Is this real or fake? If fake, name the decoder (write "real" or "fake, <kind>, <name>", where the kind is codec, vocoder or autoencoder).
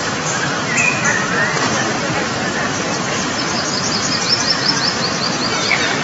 real